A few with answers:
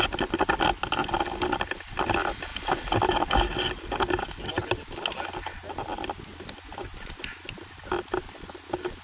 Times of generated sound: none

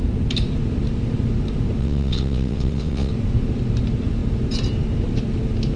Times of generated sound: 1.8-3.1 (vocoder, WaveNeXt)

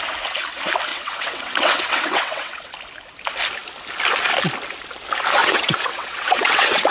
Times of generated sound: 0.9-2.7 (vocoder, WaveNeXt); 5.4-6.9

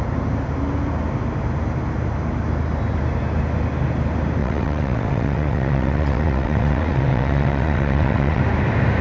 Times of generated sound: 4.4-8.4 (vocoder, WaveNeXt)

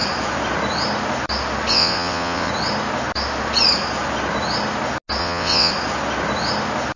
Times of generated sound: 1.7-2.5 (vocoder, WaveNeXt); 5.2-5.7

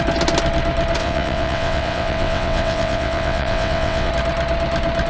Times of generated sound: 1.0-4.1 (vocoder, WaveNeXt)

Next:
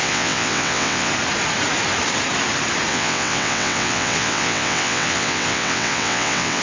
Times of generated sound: 0.0-1.1 (vocoder, WaveNeXt); 2.9-6.6